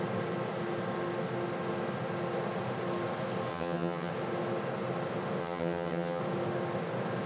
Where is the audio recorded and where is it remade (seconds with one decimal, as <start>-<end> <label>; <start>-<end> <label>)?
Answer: 0.0-3.5 recorded; 3.5-4.1 remade; 4.1-5.4 recorded; 5.4-6.2 remade; 6.2-7.3 recorded

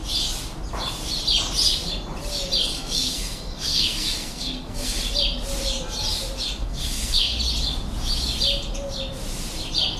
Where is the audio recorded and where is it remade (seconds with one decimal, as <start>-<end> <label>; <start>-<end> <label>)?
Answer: 0.0-2.6 recorded; 2.6-5.0 remade; 5.0-6.6 recorded; 6.6-7.4 remade; 7.4-10.0 recorded

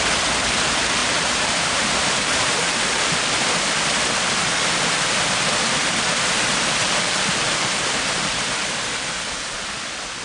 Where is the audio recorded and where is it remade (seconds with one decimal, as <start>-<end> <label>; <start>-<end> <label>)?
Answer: 0.0-1.0 recorded; 1.0-3.5 remade; 3.5-6.8 recorded; 6.8-9.1 remade; 9.1-10.2 recorded

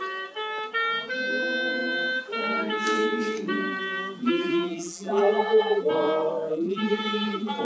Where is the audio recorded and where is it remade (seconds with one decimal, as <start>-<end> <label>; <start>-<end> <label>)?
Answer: 0.0-4.2 recorded; 4.2-5.9 remade; 5.9-6.5 recorded; 6.5-7.6 remade

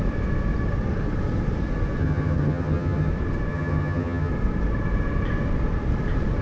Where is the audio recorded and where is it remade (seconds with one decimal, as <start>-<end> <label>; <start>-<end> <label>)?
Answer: 0.0-2.0 recorded; 2.0-3.1 remade; 3.1-3.5 recorded; 3.5-4.3 remade; 4.3-6.4 recorded

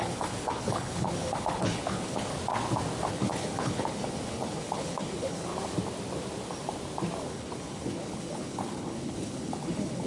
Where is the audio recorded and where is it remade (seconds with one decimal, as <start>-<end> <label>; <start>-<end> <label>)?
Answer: 0.0-2.3 remade; 2.3-3.1 recorded; 3.1-5.5 remade; 5.5-7.2 recorded; 7.2-10.1 remade

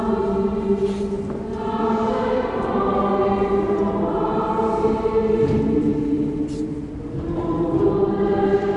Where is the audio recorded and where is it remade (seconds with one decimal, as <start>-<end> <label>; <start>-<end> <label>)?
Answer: 0.0-8.8 recorded

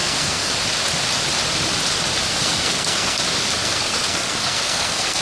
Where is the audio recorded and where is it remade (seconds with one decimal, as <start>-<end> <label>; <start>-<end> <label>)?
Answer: 0.0-0.5 remade; 0.5-2.3 recorded; 2.3-3.2 remade; 3.2-3.6 recorded; 3.6-5.2 remade